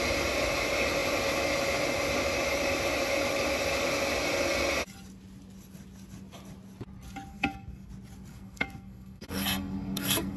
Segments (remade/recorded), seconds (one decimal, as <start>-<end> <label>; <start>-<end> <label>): 0.0-7.3 recorded; 7.3-7.9 remade; 7.9-8.3 recorded; 8.3-10.4 remade